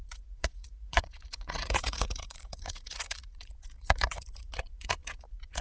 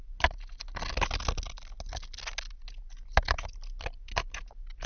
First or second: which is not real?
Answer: first